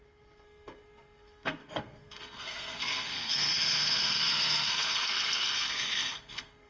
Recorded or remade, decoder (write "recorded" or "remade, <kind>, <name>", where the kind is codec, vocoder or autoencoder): remade, codec, SNAC